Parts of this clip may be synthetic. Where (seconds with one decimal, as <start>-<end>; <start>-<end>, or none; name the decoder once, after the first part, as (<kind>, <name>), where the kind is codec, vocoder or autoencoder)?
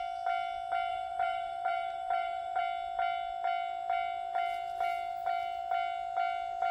0.9-2.6 (vocoder, BigVGAN v2)